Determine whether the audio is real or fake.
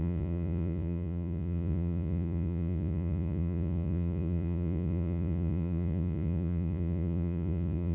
fake